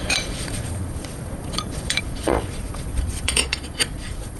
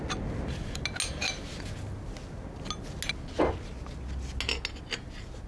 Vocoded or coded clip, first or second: first